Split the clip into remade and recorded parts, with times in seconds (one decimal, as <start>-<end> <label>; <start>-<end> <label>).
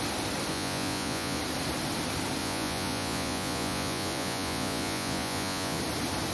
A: 0.0-0.5 recorded; 0.5-1.4 remade; 1.4-2.4 recorded; 2.4-5.8 remade; 5.8-6.3 recorded